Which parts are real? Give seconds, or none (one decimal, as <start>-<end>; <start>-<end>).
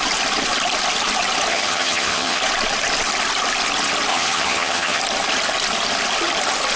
0.0-1.5; 2.4-4.1; 5.0-6.8